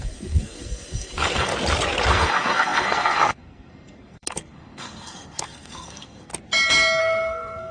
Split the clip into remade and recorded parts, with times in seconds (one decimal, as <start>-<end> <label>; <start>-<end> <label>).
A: 0.0-1.5 remade; 1.5-2.1 recorded; 2.1-6.3 remade; 6.3-7.0 recorded; 7.0-7.7 remade